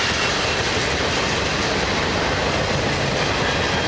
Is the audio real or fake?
real